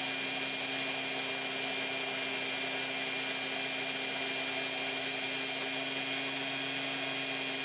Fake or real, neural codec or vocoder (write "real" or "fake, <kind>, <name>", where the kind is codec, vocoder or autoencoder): real